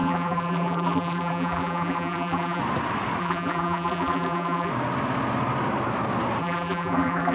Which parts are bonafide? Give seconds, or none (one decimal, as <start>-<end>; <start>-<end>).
2.6-3.2; 4.7-6.4